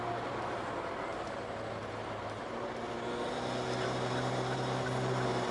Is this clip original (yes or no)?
yes